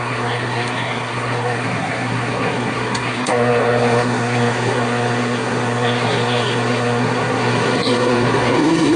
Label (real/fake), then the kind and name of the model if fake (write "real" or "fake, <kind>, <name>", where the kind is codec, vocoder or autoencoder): fake, codec, SNAC